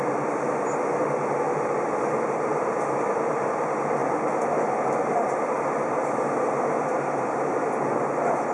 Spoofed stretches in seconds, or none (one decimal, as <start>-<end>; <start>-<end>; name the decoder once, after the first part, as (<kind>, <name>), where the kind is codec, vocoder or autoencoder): none